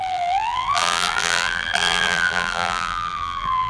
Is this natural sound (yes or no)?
no